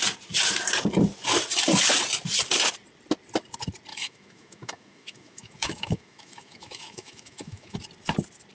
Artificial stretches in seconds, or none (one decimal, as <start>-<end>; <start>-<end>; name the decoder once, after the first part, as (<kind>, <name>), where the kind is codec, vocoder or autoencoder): 3.9-7.8 (autoencoder, DAC-VAE)